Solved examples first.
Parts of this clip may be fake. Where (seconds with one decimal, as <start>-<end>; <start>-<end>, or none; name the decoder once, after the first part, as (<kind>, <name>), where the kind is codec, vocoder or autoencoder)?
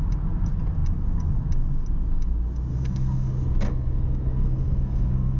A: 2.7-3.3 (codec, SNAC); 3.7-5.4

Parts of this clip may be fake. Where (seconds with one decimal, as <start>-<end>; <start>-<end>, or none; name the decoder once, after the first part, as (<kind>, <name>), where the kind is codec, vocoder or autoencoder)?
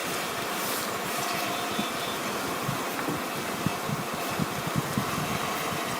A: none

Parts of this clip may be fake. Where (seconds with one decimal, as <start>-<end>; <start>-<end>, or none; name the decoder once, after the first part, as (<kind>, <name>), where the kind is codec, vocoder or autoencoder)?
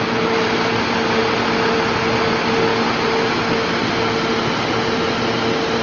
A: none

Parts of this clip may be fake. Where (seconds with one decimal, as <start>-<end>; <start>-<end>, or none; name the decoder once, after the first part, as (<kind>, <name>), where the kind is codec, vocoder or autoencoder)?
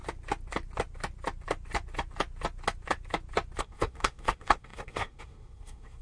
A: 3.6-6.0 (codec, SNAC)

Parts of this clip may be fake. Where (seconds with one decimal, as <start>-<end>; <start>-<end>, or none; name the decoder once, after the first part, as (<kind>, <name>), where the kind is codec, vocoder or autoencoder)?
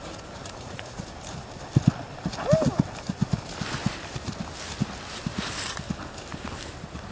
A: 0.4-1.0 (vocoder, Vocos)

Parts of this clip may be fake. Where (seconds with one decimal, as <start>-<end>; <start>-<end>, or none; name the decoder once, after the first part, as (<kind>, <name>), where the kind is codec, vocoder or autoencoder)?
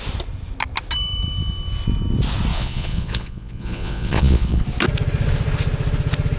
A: 2.5-4.6 (vocoder, Vocos)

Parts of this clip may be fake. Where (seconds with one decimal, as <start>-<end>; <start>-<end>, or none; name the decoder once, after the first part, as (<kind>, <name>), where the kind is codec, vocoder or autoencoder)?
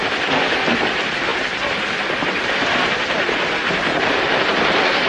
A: none